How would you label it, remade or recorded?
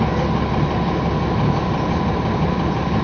recorded